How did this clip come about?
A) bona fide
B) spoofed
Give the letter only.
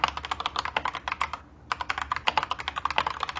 A